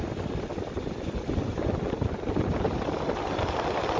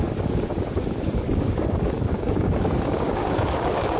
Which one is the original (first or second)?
first